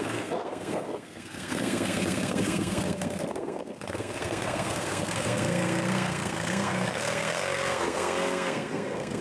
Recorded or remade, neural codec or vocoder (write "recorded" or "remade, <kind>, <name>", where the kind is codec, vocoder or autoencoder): remade, codec, SNAC